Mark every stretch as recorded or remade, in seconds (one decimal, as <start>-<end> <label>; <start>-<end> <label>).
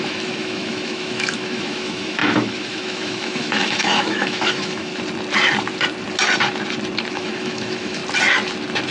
0.0-4.9 remade; 4.9-7.1 recorded; 7.1-8.0 remade; 8.0-8.9 recorded